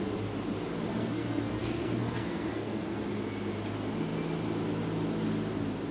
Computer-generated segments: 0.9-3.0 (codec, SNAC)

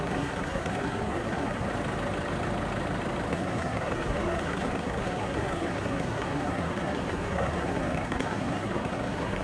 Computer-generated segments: 0.0-1.7 (codec, SNAC); 3.3-9.4